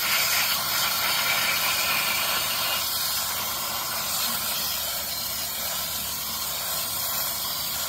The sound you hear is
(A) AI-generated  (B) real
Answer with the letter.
A